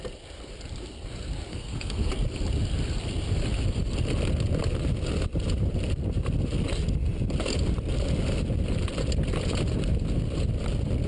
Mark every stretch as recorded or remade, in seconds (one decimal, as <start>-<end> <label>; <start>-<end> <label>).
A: 0.0-1.5 recorded; 1.5-2.1 remade; 2.1-11.1 recorded

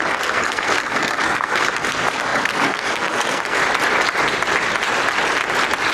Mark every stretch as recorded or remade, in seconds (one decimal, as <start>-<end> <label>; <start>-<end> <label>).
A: 0.0-3.6 remade; 3.6-5.9 recorded

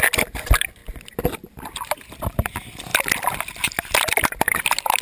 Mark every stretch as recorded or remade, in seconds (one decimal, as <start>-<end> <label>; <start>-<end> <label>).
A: 0.0-5.0 recorded

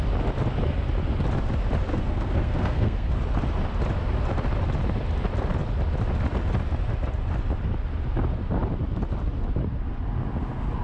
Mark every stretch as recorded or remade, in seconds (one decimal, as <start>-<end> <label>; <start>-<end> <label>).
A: 0.0-1.9 recorded; 1.9-3.2 remade; 3.2-10.8 recorded

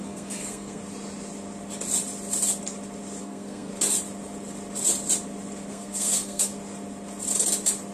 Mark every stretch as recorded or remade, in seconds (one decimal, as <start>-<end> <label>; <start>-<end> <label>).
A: 0.0-0.8 remade; 0.8-3.2 recorded; 3.2-3.7 remade; 3.7-5.7 recorded; 5.7-6.5 remade; 6.5-7.9 recorded

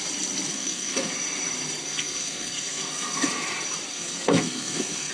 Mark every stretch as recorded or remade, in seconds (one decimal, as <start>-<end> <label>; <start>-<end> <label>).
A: 0.0-0.5 recorded; 0.5-1.1 remade; 1.1-1.8 recorded; 1.8-3.3 remade; 3.3-3.9 recorded; 3.9-5.1 remade